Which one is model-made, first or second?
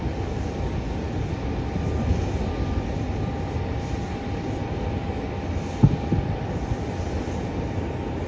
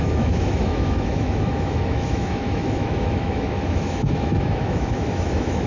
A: second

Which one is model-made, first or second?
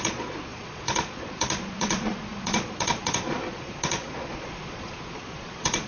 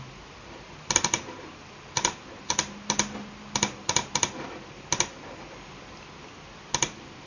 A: first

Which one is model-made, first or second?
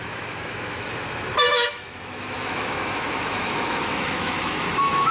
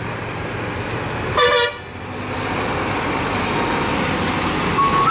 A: first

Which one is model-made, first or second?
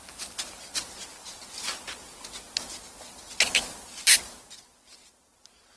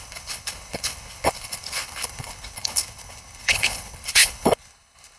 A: second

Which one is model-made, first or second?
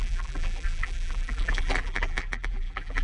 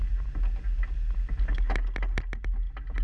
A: first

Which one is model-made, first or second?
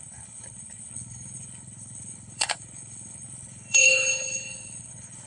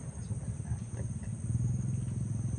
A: first